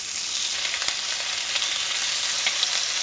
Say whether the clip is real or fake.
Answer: fake